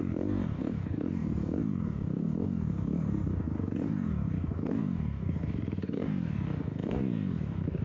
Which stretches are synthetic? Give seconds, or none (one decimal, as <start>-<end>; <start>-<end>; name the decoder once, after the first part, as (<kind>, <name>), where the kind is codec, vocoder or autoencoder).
0.0-7.8 (codec, DAC)